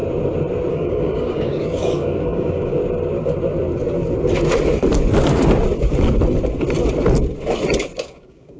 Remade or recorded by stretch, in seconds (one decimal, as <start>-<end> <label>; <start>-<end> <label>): 0.0-0.7 recorded; 0.7-2.8 remade; 2.8-7.8 recorded; 7.8-8.6 remade